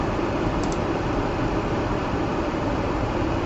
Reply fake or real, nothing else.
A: fake